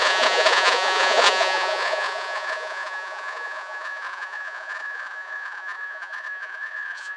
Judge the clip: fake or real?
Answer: fake